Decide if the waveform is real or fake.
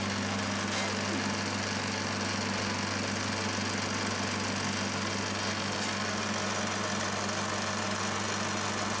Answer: real